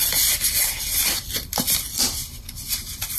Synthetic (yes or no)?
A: no